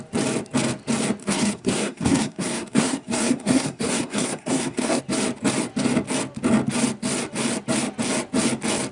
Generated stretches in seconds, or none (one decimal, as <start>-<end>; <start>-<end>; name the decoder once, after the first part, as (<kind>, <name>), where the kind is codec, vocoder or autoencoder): 1.2-5.0 (codec, SNAC)